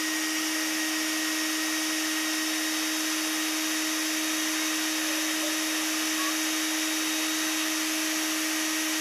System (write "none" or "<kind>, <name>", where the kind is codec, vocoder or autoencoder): none